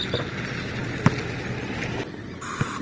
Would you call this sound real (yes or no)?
yes